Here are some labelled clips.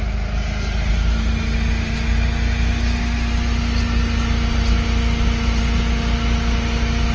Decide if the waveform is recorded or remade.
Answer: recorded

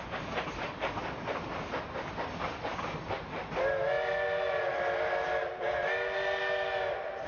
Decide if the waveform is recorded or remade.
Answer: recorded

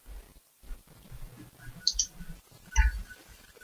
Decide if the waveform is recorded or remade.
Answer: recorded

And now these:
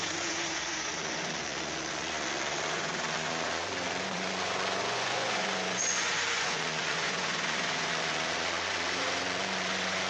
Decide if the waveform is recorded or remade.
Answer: remade